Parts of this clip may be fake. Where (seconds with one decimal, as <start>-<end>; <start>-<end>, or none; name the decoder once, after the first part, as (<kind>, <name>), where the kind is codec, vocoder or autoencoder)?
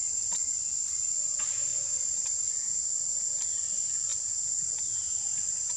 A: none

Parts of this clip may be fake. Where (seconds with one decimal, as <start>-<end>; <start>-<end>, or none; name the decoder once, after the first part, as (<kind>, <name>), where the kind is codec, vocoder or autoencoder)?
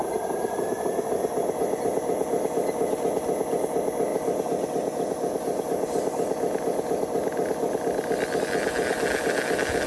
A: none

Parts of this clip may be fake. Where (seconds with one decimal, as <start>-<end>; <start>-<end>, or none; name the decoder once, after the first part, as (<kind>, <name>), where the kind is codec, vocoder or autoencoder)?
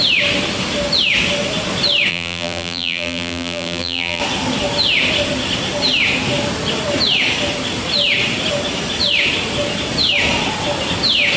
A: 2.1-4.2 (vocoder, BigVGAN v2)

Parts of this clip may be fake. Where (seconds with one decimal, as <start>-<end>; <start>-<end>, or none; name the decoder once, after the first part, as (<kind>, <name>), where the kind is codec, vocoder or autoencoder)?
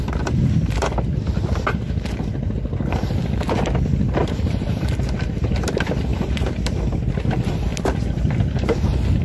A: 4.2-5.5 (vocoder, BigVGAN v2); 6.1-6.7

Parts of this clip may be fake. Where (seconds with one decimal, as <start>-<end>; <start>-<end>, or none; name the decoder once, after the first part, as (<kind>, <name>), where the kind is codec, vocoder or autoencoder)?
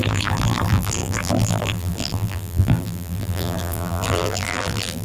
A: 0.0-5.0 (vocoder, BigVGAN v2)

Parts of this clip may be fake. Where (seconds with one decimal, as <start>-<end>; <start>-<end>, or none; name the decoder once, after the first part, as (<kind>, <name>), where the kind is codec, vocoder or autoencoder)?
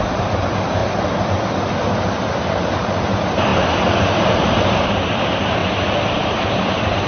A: 0.0-0.8 (vocoder, BigVGAN v2); 2.4-3.5; 4.7-5.6; 6.2-7.1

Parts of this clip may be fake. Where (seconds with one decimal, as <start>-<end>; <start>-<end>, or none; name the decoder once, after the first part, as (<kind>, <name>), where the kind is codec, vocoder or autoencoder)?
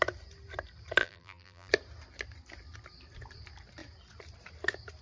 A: 1.0-1.7 (vocoder, BigVGAN v2)